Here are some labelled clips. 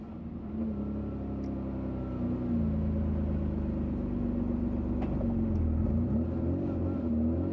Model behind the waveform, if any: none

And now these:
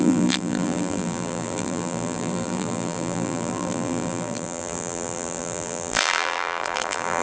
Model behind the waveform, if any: vocoder, BigVGAN v2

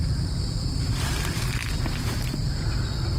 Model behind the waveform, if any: none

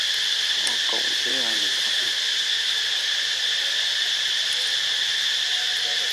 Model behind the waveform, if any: none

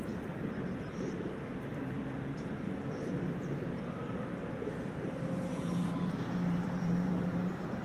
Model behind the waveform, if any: vocoder, BigVGAN v2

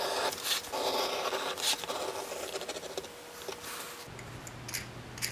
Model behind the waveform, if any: none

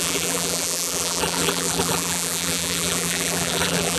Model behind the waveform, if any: vocoder, BigVGAN v2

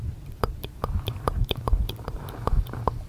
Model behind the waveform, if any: vocoder, BigVGAN v2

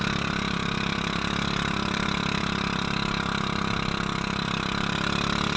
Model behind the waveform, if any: vocoder, BigVGAN v2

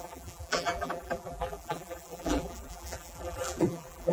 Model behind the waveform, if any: vocoder, BigVGAN v2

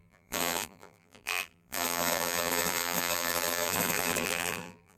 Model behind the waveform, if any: vocoder, BigVGAN v2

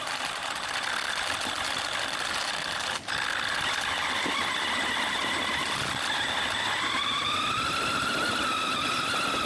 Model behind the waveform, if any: none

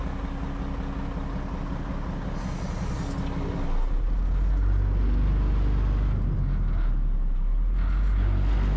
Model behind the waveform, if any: none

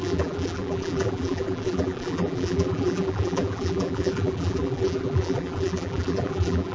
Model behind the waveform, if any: vocoder, BigVGAN v2